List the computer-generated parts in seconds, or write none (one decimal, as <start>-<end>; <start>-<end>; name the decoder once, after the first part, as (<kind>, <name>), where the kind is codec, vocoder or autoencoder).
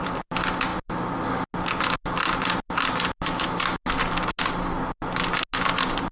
none